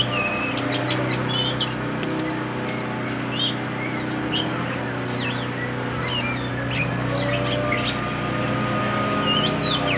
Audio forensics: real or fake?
fake